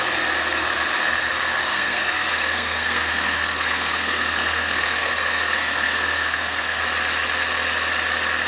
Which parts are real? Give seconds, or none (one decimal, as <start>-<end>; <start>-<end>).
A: 0.0-1.7; 6.8-8.5